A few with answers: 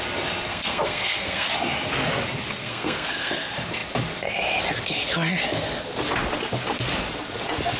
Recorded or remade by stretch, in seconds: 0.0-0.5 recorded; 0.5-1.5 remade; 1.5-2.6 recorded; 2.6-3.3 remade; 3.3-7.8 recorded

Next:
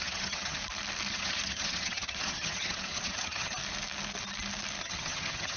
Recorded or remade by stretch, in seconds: 0.0-0.6 remade; 0.6-1.1 recorded; 1.1-3.6 remade; 3.6-4.8 recorded; 4.8-5.6 remade

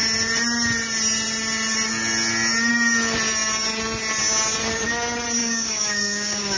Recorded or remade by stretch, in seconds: 0.0-5.4 recorded; 5.4-6.6 remade

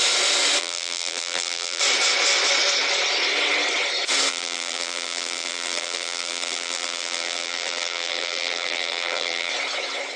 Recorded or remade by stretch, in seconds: 0.0-0.6 recorded; 0.6-1.8 remade; 1.8-4.3 recorded; 4.3-9.5 remade; 9.5-10.2 recorded